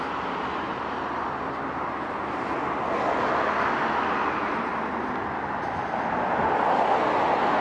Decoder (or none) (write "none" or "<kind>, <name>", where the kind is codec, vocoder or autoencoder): none